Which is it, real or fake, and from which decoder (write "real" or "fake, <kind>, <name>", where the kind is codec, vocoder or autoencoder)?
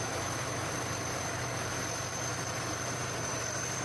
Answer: fake, vocoder, BigVGAN v2